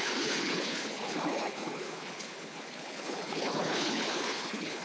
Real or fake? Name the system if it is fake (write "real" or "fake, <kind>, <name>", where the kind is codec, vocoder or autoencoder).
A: fake, codec, HILCodec